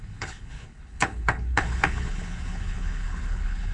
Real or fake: fake